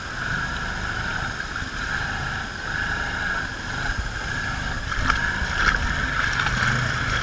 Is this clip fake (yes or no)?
no